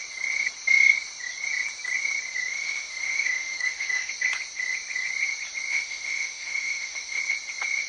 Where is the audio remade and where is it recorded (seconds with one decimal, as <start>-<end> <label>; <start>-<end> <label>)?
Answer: 0.0-2.5 recorded; 2.5-4.1 remade; 4.1-5.7 recorded; 5.7-7.2 remade; 7.2-7.9 recorded